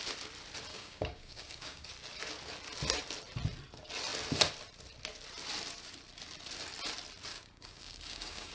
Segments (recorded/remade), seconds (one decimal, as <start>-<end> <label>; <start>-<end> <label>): 0.0-0.7 recorded; 0.7-1.9 remade; 1.9-7.3 recorded; 7.3-8.5 remade